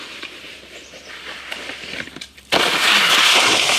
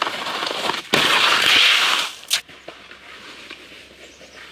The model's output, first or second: first